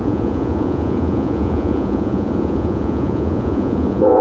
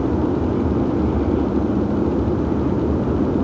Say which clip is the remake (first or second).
first